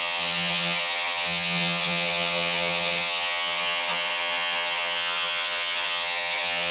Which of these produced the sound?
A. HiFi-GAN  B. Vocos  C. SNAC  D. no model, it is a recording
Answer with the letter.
A